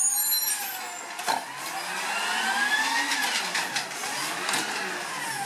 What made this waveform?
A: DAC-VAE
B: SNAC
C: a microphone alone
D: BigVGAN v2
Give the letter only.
C